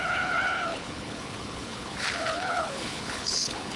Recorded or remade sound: remade